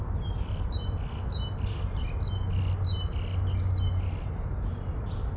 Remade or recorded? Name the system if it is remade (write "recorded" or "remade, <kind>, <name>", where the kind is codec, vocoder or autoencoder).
recorded